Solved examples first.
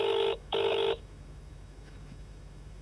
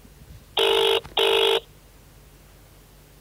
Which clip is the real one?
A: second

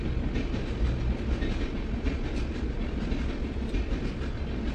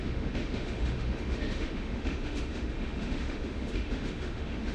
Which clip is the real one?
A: first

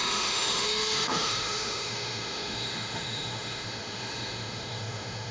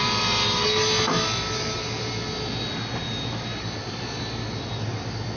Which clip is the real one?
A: second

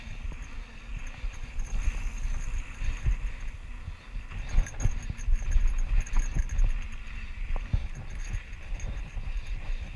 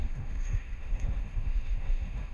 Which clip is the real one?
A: first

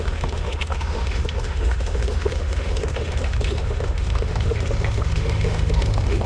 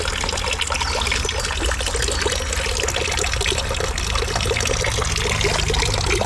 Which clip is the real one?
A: second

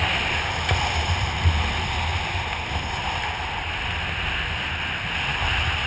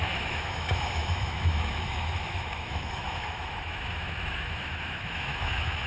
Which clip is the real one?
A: first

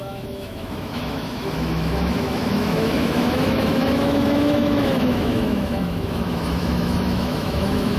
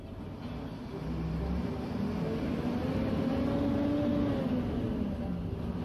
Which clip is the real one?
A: second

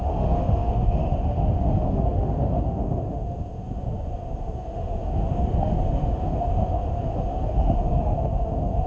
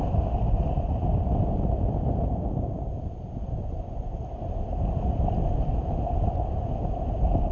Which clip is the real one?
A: second